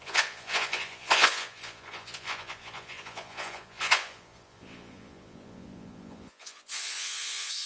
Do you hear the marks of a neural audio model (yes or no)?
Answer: yes